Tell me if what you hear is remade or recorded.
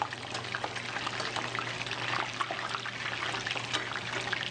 recorded